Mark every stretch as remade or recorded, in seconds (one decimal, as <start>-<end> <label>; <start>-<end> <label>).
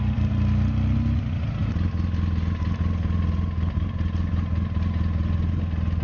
0.0-6.0 recorded